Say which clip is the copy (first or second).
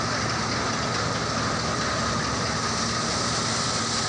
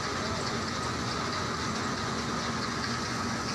second